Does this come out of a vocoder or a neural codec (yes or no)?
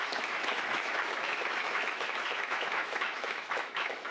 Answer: yes